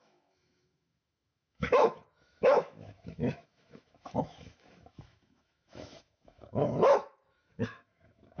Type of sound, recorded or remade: remade